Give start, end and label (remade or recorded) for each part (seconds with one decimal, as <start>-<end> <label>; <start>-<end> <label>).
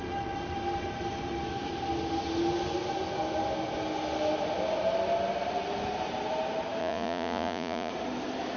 0.0-6.8 recorded; 6.8-7.9 remade; 7.9-8.6 recorded